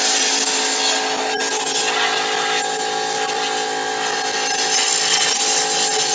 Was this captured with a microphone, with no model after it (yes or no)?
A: yes